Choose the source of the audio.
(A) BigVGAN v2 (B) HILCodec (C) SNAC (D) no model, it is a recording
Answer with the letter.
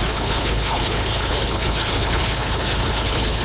B